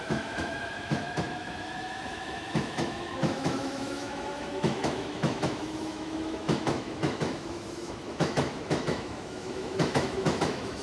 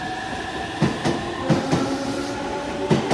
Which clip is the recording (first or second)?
second